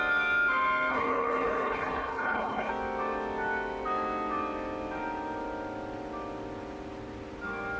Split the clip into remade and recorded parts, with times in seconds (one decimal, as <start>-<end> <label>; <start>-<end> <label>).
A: 0.0-0.9 recorded; 0.9-2.7 remade; 2.7-7.8 recorded